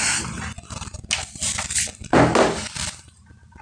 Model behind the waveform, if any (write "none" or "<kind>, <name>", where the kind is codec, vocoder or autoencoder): none